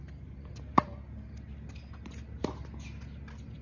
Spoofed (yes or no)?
no